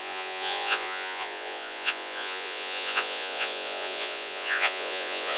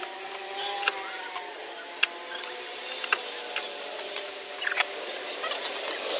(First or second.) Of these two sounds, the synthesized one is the first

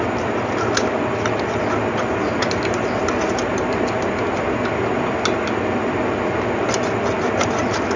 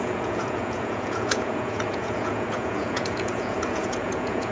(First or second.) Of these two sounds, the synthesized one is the second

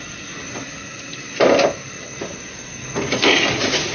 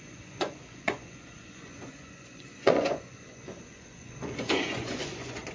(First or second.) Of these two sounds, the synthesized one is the second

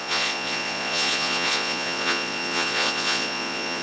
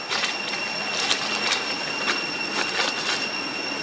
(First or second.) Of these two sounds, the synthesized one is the first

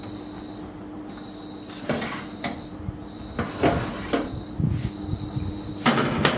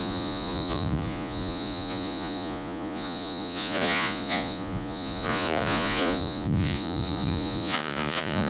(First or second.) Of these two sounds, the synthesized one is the second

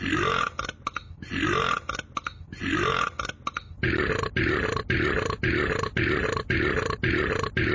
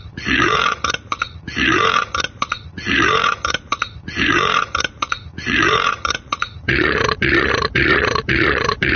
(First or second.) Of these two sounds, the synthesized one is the second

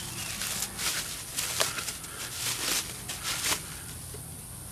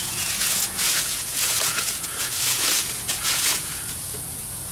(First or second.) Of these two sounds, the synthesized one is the second